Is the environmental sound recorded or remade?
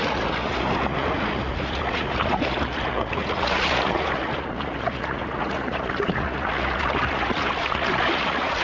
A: remade